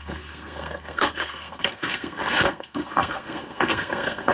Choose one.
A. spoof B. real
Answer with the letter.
A